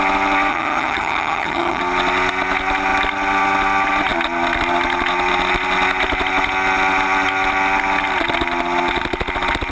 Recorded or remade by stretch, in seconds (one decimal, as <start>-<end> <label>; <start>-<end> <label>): 0.0-0.5 recorded; 0.5-1.8 remade; 1.8-9.7 recorded